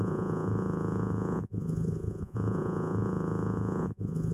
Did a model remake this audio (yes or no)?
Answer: yes